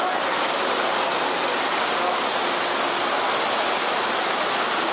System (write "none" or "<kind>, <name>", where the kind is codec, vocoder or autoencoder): none